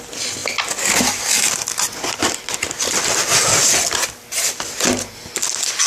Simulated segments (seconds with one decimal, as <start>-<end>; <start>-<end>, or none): none